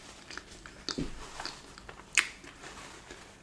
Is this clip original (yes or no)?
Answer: yes